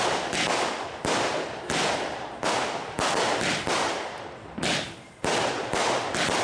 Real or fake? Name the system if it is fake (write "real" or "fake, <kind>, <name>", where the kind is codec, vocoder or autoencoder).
real